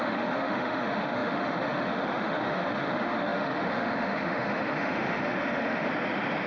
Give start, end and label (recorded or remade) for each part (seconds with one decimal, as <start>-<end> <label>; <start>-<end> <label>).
0.0-5.9 remade; 5.9-6.5 recorded